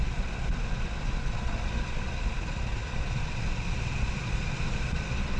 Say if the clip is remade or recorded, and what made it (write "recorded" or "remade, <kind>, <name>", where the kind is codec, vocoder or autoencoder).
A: remade, vocoder, Vocos